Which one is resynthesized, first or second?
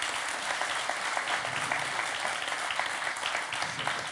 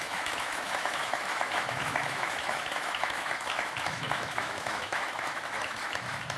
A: second